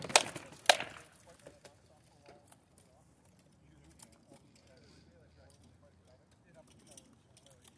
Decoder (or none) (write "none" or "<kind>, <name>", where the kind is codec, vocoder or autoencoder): none